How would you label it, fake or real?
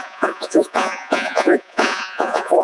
fake